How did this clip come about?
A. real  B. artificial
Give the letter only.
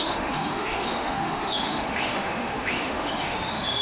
B